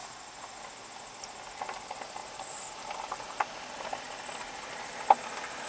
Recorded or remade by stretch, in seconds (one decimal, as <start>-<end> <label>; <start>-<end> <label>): 0.0-5.7 recorded